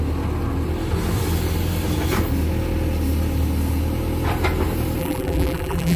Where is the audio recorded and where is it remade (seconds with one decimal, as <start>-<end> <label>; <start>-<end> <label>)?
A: 0.0-5.0 recorded; 5.0-6.0 remade